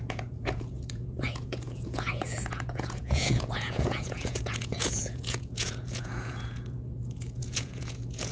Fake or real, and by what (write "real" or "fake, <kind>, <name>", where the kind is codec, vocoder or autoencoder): fake, vocoder, Vocos